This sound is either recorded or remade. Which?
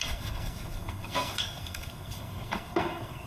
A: remade